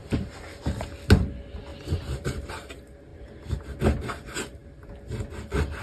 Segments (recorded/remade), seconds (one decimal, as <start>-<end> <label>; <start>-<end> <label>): 0.0-0.6 remade; 0.6-1.7 recorded; 1.7-2.5 remade; 2.5-3.1 recorded; 3.1-3.7 remade; 3.7-5.8 recorded